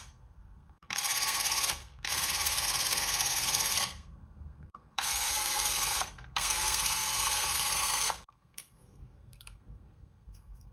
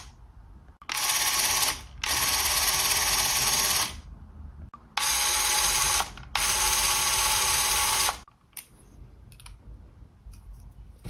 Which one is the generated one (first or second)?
first